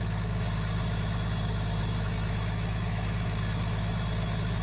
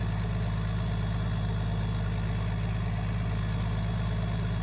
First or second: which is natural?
second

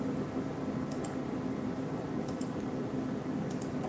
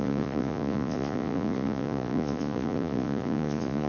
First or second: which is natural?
first